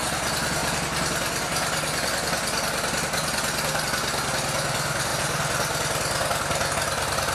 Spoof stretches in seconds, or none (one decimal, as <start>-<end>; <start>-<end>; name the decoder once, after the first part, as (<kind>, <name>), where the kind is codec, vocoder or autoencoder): none